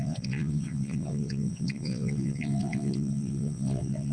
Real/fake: fake